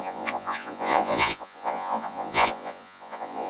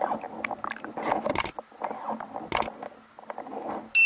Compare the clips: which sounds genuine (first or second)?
second